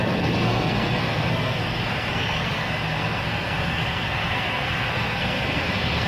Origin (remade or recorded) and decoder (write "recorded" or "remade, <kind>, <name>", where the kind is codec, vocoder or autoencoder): remade, codec, SNAC